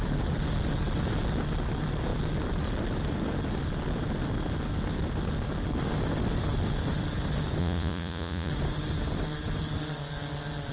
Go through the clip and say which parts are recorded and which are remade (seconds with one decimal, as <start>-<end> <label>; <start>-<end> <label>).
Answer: 0.0-7.6 recorded; 7.6-8.5 remade; 8.5-10.7 recorded